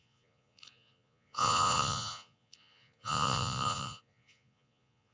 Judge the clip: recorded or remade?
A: remade